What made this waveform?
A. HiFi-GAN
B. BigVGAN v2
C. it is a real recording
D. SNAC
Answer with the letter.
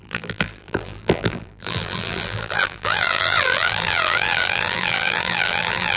B